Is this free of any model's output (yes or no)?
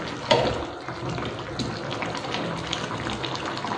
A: yes